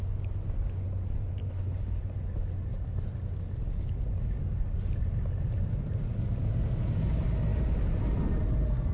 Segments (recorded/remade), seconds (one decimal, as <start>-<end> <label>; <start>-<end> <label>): 0.0-1.4 recorded; 1.4-2.0 remade; 2.0-8.9 recorded